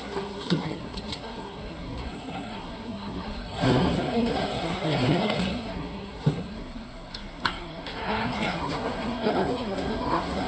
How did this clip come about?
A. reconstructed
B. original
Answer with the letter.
A